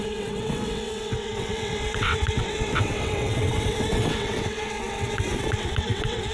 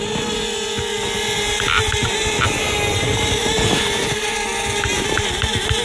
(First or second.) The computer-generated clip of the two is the first